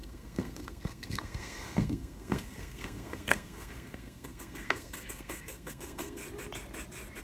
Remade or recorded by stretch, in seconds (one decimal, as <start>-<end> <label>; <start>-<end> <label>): 0.0-6.2 remade; 6.2-7.2 recorded